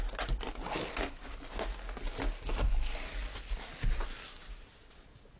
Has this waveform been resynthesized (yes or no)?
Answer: no